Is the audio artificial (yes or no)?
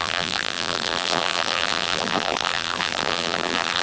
yes